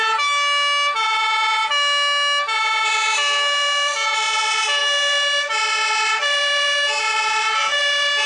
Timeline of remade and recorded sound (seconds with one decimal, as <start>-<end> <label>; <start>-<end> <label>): 0.0-8.3 recorded

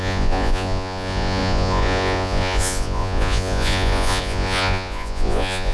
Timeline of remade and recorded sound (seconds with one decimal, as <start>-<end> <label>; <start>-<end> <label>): 0.0-5.7 remade

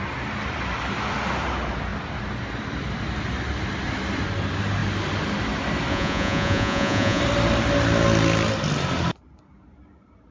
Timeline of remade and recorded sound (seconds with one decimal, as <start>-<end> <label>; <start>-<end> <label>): 0.0-5.9 recorded; 5.9-7.2 remade; 7.2-10.3 recorded

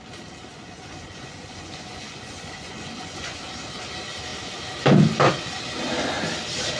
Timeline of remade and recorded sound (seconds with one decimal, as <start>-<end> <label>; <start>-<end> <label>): 0.0-0.5 recorded; 0.5-3.4 remade; 3.4-6.8 recorded

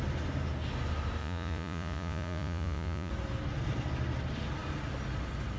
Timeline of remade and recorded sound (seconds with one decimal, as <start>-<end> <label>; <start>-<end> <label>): 0.0-1.2 recorded; 1.2-3.1 remade; 3.1-5.6 recorded

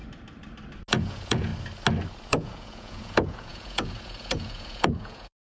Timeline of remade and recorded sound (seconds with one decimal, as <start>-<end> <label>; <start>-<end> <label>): 0.0-0.9 recorded; 0.9-1.5 remade; 1.5-2.3 recorded; 2.3-5.4 remade

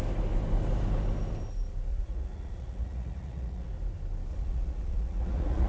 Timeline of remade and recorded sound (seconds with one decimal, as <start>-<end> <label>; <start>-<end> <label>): 0.0-1.9 recorded; 1.9-3.7 remade; 3.7-4.3 recorded; 4.3-5.7 remade